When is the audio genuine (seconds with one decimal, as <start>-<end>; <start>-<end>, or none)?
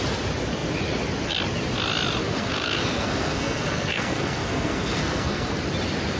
0.0-2.2; 5.5-6.2